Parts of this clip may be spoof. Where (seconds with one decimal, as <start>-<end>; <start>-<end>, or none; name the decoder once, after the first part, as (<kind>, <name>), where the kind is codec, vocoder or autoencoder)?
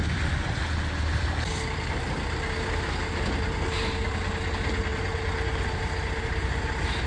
none